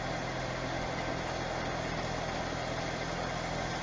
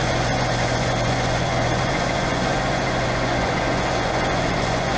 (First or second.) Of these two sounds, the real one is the first